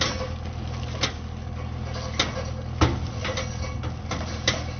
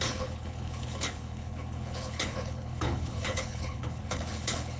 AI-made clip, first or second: second